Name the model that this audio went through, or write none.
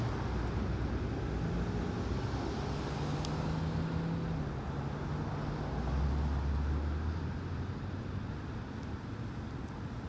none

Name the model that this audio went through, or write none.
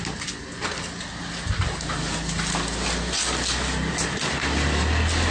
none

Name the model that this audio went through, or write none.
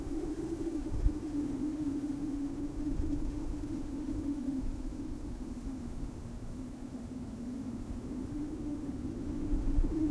autoencoder, DAC-VAE